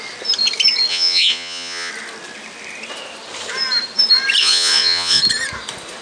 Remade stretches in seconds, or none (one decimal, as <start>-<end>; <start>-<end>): 0.9-1.9; 4.4-5.2